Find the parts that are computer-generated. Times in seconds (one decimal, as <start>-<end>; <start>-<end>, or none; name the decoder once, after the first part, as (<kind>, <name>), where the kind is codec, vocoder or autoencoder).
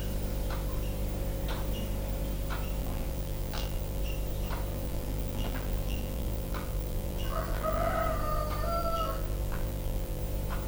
2.8-4.0 (vocoder, BigVGAN v2); 4.7-7.9; 8.8-10.2